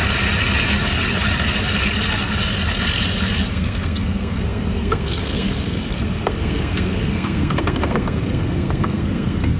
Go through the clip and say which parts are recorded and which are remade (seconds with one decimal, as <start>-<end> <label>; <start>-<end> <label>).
0.0-3.5 recorded; 3.5-9.6 remade